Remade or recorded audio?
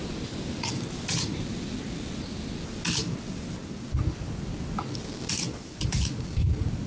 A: recorded